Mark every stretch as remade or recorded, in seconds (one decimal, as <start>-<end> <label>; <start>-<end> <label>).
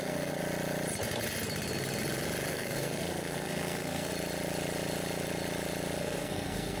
0.0-0.4 remade; 0.4-2.5 recorded; 2.5-4.1 remade; 4.1-6.0 recorded; 6.0-6.8 remade